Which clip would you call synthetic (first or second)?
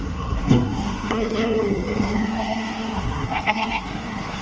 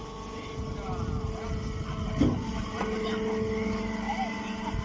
first